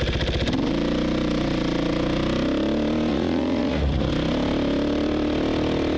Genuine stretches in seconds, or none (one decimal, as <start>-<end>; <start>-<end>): 0.0-3.1; 4.1-6.0